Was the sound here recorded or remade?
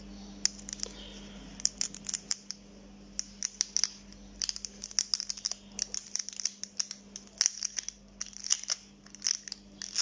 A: recorded